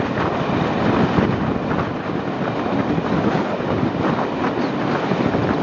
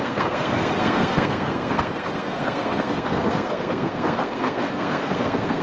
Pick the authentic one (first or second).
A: first